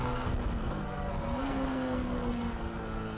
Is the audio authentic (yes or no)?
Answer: no